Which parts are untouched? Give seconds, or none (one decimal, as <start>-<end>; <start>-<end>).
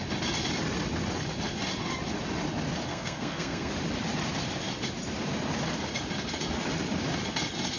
0.0-2.9; 3.7-7.8